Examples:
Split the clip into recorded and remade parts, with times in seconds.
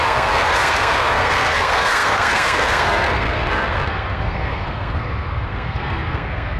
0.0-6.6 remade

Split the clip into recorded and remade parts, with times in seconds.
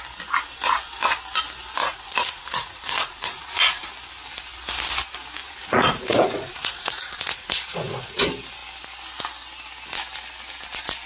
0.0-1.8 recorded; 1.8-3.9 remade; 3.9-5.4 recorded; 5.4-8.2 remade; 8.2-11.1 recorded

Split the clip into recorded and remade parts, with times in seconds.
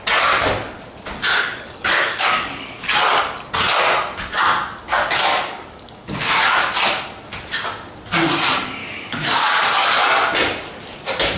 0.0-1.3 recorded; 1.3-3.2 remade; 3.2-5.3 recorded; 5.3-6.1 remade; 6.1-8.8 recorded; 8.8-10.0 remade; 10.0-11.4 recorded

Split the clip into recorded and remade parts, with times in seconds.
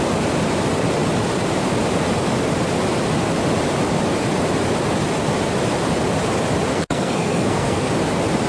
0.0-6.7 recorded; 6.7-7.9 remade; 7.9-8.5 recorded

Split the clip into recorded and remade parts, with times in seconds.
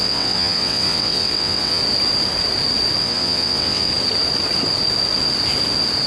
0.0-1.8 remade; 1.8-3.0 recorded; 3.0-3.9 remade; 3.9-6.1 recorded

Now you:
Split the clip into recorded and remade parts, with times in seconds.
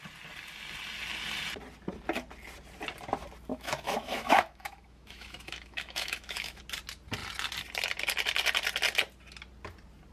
0.0-3.5 recorded; 3.5-6.6 remade; 6.6-10.1 recorded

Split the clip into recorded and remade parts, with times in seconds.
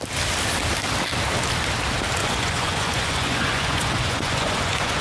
0.0-2.2 recorded; 2.2-5.0 remade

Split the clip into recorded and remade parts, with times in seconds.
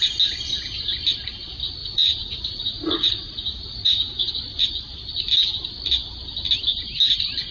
0.0-1.8 recorded; 1.8-4.3 remade; 4.3-7.5 recorded